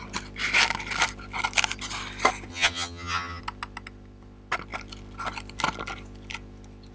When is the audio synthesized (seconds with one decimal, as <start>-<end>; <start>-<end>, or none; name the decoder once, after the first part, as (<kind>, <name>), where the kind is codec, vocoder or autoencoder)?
2.5-3.4 (vocoder, HiFi-GAN)